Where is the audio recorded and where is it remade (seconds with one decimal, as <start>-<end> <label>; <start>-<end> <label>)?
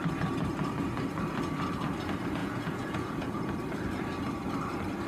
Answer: 0.0-2.4 recorded; 2.4-3.5 remade; 3.5-5.1 recorded